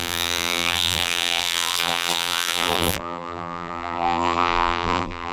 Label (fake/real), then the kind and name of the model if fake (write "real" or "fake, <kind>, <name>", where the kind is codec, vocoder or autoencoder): fake, vocoder, BigVGAN v2